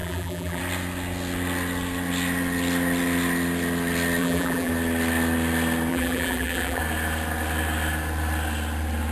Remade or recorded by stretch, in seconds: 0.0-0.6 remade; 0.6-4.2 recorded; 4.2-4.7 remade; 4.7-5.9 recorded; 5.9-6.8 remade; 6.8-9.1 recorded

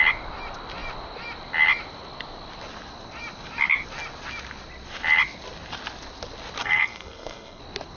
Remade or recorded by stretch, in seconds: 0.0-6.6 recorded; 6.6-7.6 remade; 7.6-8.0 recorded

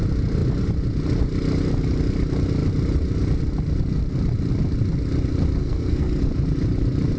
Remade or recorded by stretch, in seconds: 0.0-5.6 recorded; 5.6-6.2 remade; 6.2-7.2 recorded

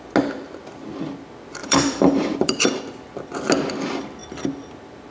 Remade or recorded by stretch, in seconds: 0.0-1.6 recorded; 1.6-2.6 remade; 2.6-5.1 recorded

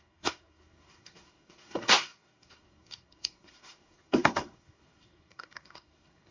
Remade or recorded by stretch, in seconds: 0.0-6.3 remade

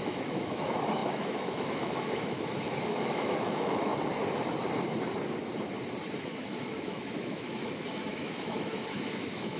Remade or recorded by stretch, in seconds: 0.0-3.9 remade; 3.9-6.2 recorded; 6.2-9.6 remade